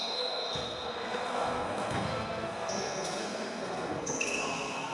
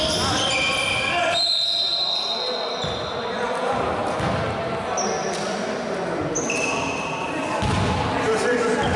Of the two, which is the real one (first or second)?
second